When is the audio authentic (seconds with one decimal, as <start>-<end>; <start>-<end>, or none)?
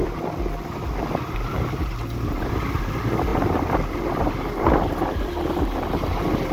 2.5-3.3; 5.3-6.5